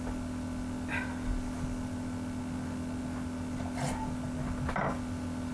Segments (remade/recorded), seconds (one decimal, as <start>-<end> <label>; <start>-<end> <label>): 0.0-5.5 recorded